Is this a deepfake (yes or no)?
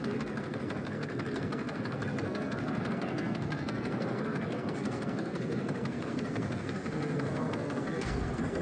yes